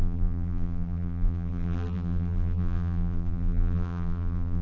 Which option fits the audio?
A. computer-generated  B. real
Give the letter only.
A